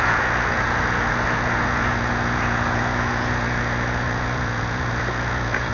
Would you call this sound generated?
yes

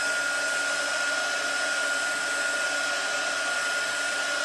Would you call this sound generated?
no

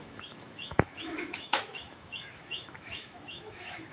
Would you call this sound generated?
yes